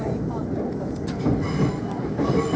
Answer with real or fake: real